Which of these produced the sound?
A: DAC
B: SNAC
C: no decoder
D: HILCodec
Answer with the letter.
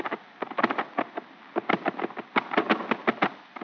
C